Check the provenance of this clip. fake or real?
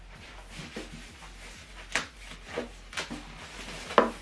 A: real